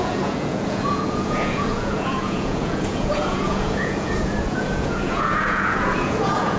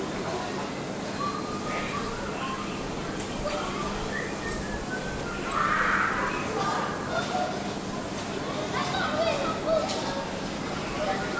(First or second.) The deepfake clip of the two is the first